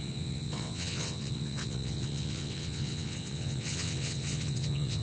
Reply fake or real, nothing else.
fake